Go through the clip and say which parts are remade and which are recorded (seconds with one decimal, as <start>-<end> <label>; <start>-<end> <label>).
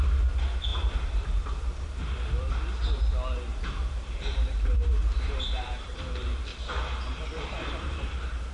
0.0-0.7 recorded; 0.7-2.0 remade; 2.0-3.5 recorded; 3.5-6.0 remade; 6.0-6.5 recorded; 6.5-8.5 remade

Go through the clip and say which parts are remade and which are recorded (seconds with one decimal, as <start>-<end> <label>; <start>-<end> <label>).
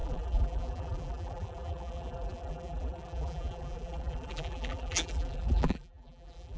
0.0-6.6 remade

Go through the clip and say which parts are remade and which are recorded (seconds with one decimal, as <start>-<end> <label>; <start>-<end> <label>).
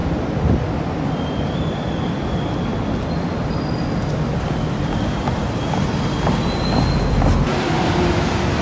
0.0-1.9 recorded; 1.9-5.4 remade; 5.4-7.1 recorded; 7.1-8.6 remade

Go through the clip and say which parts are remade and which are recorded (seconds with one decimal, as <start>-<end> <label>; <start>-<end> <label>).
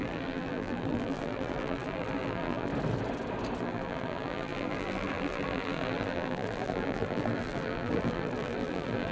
0.0-2.7 remade; 2.7-3.6 recorded; 3.6-9.1 remade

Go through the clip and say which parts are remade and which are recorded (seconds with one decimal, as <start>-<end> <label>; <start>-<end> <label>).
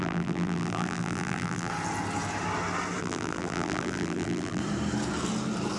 0.0-1.7 remade; 1.7-3.0 recorded; 3.0-4.6 remade; 4.6-5.8 recorded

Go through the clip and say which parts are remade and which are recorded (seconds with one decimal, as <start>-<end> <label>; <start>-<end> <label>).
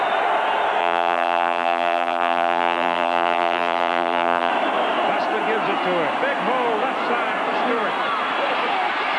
0.0-0.8 recorded; 0.8-4.5 remade; 4.5-9.2 recorded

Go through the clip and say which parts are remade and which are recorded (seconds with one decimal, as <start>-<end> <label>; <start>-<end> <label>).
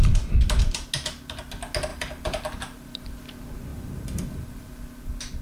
0.0-1.9 recorded; 1.9-3.1 remade; 3.1-3.7 recorded; 3.7-4.8 remade; 4.8-5.4 recorded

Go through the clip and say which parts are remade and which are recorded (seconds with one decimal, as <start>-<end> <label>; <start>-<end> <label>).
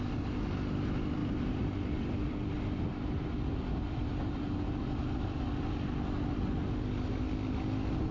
0.0-1.2 recorded; 1.2-5.6 remade; 5.6-8.1 recorded